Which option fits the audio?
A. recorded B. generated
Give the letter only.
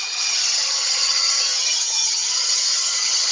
B